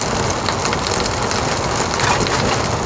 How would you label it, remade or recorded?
recorded